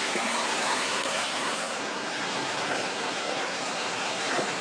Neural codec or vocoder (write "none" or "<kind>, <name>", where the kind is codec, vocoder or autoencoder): codec, SNAC